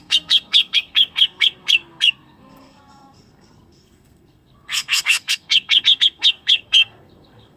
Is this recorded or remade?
remade